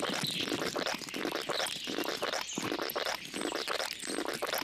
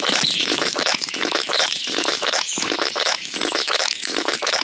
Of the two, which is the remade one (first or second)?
second